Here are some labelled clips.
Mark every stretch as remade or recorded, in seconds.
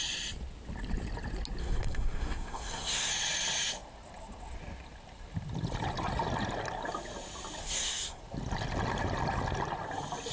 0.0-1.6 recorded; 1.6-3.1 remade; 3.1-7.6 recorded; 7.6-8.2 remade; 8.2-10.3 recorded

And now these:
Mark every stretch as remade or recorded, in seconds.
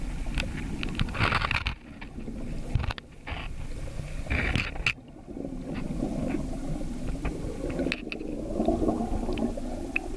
0.0-10.2 recorded